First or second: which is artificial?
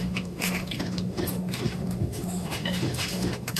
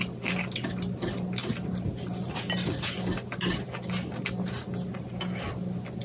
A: first